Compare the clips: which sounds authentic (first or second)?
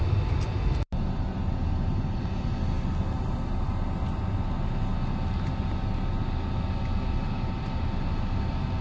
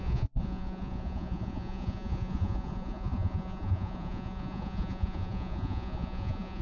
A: first